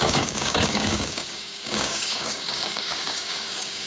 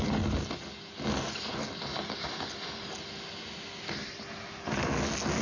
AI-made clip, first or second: first